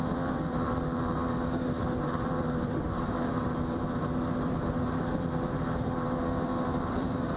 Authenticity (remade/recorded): remade